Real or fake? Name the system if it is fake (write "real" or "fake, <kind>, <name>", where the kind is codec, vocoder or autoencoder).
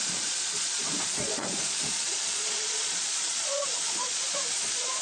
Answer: fake, vocoder, Vocos